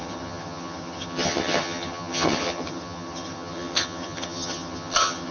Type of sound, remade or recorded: remade